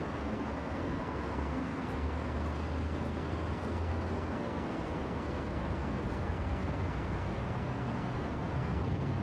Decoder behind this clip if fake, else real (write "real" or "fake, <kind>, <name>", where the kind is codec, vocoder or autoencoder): fake, codec, SNAC